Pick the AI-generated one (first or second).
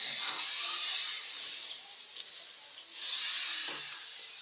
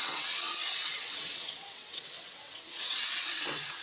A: second